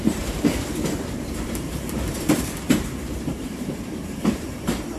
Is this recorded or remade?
remade